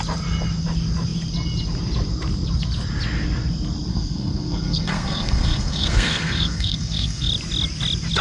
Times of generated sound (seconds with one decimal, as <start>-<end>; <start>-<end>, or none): 3.9-7.3